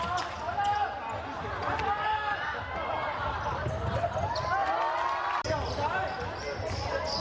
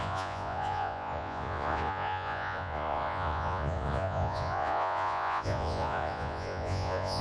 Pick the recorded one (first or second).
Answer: first